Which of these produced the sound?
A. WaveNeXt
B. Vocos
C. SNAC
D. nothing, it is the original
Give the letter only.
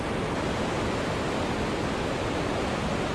D